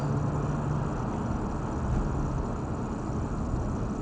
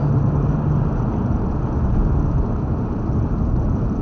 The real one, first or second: first